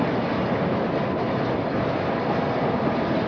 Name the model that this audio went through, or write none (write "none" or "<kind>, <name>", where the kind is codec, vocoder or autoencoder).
none